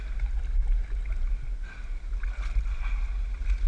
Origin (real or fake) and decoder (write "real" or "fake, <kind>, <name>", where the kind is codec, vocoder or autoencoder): real